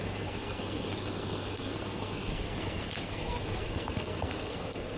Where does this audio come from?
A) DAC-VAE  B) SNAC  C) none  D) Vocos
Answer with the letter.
B